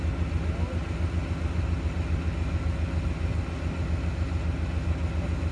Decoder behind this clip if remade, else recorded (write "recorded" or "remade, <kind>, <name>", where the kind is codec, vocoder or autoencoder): recorded